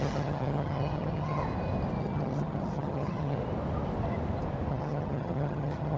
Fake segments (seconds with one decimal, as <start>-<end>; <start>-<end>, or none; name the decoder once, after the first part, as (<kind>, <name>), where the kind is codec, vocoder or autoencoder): 0.0-1.4 (vocoder, HiFi-GAN); 2.0-3.4; 4.7-6.0